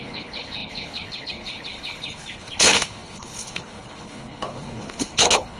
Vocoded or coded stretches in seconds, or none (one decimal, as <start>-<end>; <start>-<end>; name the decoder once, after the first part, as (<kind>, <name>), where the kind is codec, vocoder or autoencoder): 0.0-5.6 (codec, HILCodec)